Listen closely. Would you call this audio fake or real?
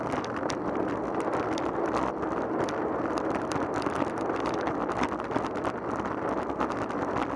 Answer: real